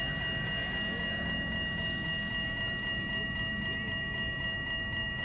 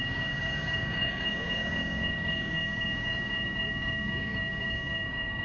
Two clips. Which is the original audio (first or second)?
first